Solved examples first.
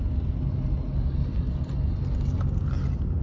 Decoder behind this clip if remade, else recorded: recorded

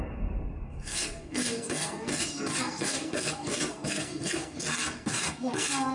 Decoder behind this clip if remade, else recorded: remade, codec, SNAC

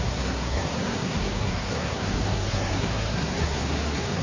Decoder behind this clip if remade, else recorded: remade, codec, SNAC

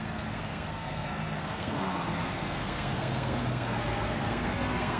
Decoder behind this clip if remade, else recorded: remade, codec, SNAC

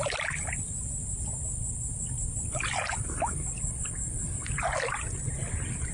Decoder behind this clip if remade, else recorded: remade, vocoder, BigVGAN v2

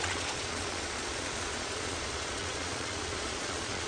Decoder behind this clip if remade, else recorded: remade, vocoder, Vocos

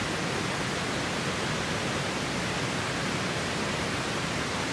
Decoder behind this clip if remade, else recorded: recorded